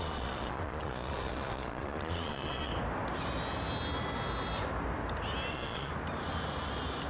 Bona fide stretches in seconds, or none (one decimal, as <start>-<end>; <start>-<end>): 2.7-5.5; 5.9-7.1